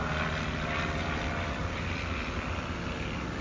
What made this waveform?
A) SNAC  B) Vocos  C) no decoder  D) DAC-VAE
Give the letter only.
C